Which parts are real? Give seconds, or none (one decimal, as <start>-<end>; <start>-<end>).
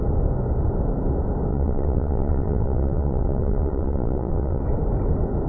0.0-1.5; 4.6-5.5